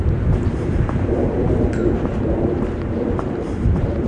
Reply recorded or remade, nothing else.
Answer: remade